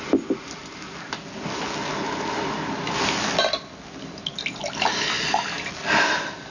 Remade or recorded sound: recorded